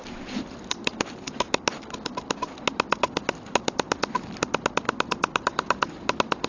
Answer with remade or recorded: recorded